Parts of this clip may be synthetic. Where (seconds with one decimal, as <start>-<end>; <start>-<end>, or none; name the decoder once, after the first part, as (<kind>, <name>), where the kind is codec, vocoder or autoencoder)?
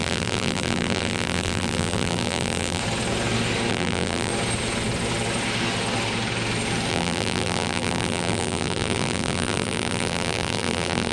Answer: 0.0-2.8 (vocoder, BigVGAN v2); 3.7-4.3; 6.9-11.1